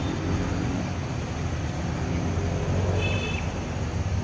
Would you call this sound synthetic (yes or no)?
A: no